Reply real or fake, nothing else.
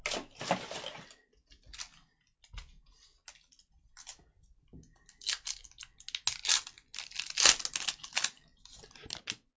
real